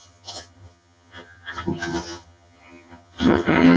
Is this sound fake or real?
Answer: fake